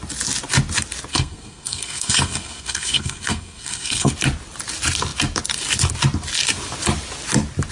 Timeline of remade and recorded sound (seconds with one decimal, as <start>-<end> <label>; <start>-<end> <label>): 0.0-1.1 recorded; 1.1-4.1 remade; 4.1-7.7 recorded